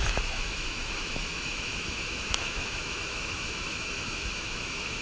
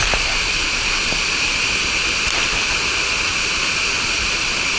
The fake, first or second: first